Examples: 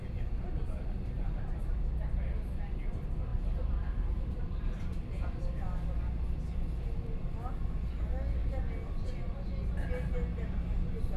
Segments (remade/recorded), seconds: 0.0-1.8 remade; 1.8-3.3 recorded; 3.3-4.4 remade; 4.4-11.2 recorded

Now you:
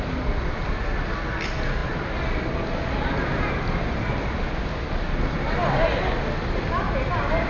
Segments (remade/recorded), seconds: 0.0-7.5 recorded